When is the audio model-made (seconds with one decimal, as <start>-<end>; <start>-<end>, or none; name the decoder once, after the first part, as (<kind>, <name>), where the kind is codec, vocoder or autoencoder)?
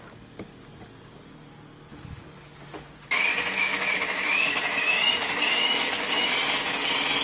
3.3-6.3 (autoencoder, DAC-VAE)